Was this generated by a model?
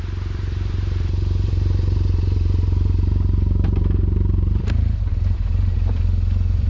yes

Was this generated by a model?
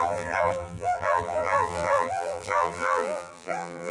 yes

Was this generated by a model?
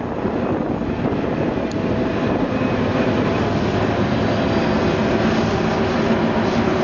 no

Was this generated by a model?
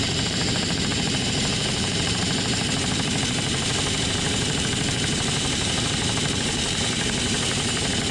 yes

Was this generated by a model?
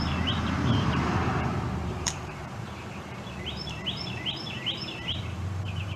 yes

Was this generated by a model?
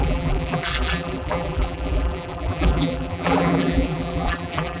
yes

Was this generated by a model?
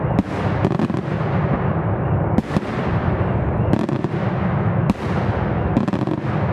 no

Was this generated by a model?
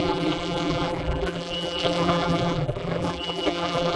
yes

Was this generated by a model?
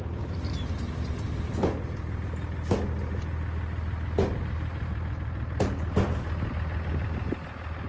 no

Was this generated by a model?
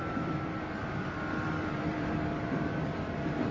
yes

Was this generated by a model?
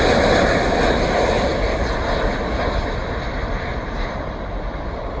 no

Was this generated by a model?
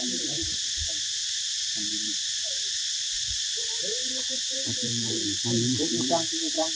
yes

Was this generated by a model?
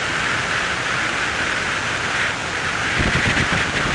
no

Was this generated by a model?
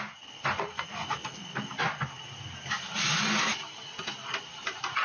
no